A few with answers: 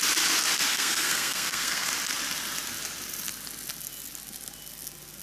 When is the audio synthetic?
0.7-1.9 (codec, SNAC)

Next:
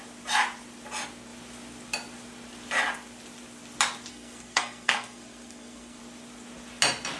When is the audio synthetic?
4.1-6.0 (codec, SNAC)